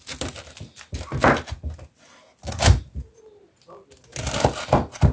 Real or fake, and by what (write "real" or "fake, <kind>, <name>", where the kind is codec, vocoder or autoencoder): real